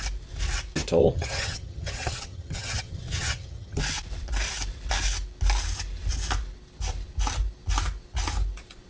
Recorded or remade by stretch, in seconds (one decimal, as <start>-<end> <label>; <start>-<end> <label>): 0.0-1.0 recorded; 1.0-3.8 remade; 3.8-8.9 recorded